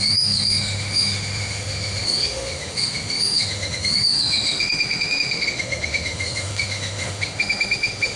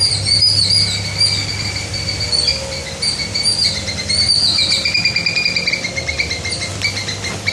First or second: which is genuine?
second